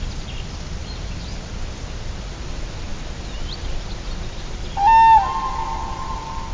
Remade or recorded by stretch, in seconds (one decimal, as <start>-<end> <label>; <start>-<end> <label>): 0.0-6.5 recorded